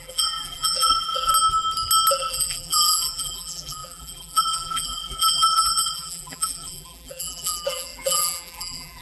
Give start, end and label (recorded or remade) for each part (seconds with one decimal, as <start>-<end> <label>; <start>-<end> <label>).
0.0-1.3 remade; 1.3-2.1 recorded; 2.1-9.0 remade